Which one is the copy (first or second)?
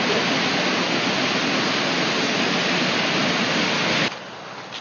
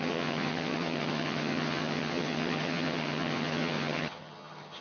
second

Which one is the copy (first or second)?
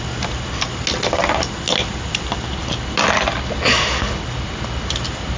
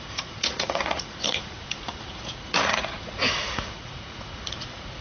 second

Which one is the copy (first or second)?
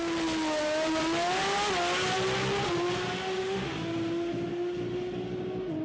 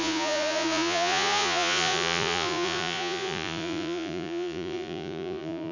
second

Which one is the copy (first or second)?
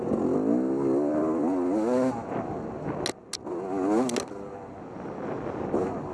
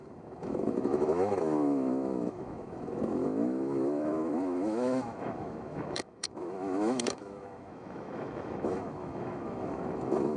second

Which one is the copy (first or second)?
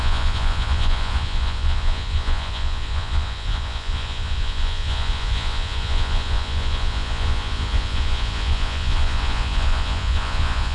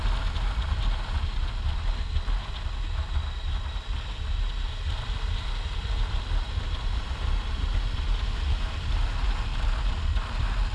first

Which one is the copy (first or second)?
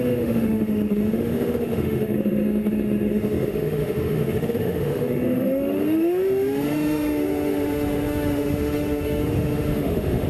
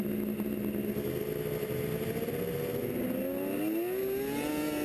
first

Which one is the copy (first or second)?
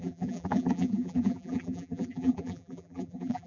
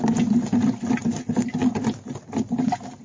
first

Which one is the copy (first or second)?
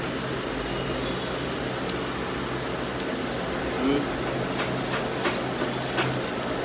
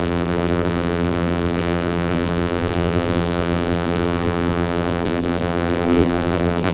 second